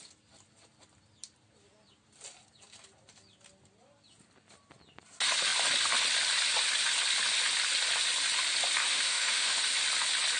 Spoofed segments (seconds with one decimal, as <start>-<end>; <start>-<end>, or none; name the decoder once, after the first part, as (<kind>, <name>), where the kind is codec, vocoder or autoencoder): 8.8-9.6 (autoencoder, DAC-VAE)

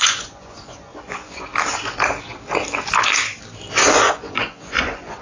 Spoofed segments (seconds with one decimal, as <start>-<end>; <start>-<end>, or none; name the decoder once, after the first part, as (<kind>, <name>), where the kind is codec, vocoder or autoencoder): 0.0-1.5 (vocoder, Vocos); 3.8-5.2